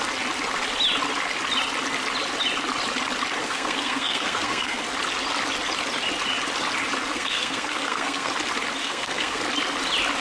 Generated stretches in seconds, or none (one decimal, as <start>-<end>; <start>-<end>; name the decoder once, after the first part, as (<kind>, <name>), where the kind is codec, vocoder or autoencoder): 3.4-4.8 (codec, SNAC); 7.1-8.3; 8.8-9.4